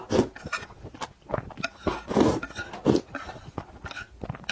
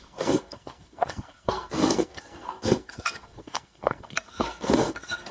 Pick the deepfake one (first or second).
second